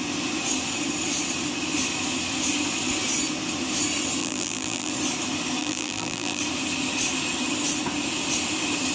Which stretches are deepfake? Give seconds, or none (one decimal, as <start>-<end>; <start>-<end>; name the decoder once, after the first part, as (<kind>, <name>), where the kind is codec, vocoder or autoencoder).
4.2-4.9 (vocoder, BigVGAN v2); 5.6-6.4